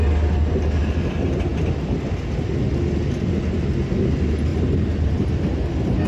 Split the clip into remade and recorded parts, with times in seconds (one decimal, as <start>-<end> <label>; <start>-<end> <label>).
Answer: 0.0-4.5 recorded; 4.5-5.3 remade; 5.3-6.1 recorded